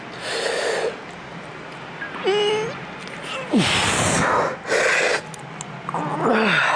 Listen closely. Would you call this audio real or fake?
real